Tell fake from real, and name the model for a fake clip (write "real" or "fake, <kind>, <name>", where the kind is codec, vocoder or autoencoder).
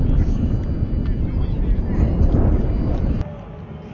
real